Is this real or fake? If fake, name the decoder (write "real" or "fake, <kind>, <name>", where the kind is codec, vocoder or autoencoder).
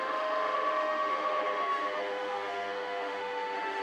fake, autoencoder, DAC-VAE